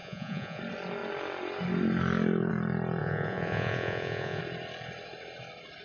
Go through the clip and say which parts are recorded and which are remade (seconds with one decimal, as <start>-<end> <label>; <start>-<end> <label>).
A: 0.0-0.6 remade; 0.6-3.0 recorded; 3.0-4.4 remade; 4.4-5.8 recorded